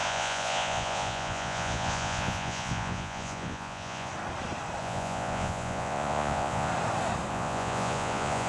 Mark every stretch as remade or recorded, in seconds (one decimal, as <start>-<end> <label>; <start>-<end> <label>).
0.0-4.1 remade; 4.1-4.8 recorded; 4.8-6.7 remade; 6.7-7.3 recorded; 7.3-8.5 remade